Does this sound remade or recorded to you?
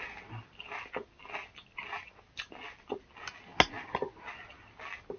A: recorded